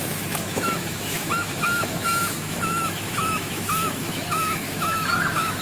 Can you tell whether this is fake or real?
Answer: fake